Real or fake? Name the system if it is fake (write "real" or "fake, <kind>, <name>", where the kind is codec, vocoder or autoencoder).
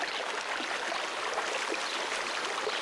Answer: real